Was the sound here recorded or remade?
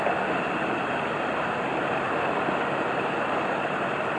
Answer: recorded